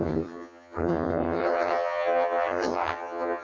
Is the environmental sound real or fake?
fake